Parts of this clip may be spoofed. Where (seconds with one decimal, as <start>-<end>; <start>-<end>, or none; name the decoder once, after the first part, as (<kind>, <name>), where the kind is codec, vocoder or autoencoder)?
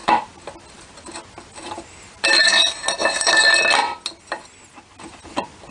none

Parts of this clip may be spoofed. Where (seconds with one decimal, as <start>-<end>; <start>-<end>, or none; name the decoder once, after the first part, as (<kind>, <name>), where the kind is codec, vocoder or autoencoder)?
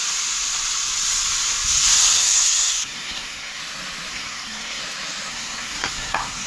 2.0-3.6 (codec, SNAC); 4.1-4.8; 5.3-6.5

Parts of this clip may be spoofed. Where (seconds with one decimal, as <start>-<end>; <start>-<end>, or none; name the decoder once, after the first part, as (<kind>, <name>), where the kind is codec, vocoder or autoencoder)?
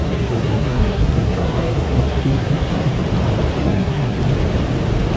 0.0-2.9 (codec, SNAC); 3.6-4.2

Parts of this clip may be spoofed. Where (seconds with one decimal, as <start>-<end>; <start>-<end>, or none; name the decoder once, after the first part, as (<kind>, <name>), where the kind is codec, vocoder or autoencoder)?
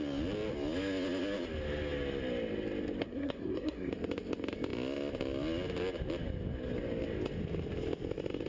3.0-3.9 (codec, SNAC)